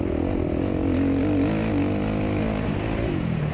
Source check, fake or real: real